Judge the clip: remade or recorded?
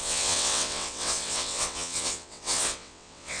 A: remade